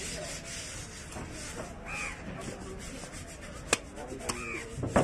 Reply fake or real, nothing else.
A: real